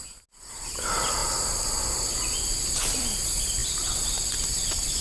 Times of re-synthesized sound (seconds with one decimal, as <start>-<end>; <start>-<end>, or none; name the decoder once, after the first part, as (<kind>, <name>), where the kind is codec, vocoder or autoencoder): none